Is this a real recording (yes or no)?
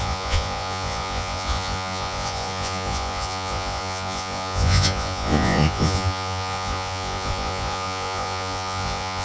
no